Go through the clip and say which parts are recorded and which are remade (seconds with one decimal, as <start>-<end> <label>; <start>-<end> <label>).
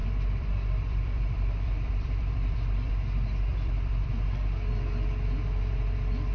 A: 0.0-2.9 remade; 2.9-3.5 recorded; 3.5-4.1 remade; 4.1-6.3 recorded